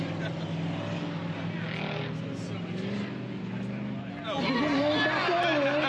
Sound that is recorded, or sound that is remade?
recorded